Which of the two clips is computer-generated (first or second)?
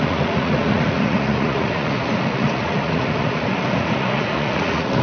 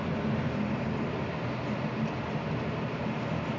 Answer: first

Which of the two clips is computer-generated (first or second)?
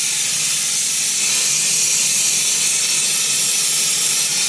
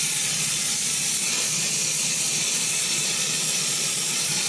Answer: second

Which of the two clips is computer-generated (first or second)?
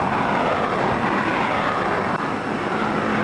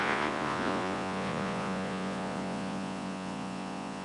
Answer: second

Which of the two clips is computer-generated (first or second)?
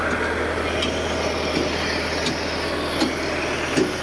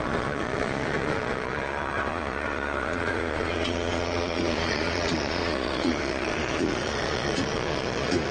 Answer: second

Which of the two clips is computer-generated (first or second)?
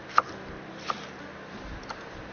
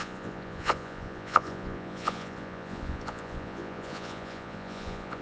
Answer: second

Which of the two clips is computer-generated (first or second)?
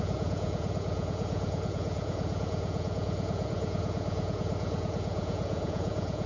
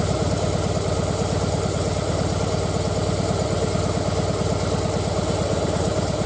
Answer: first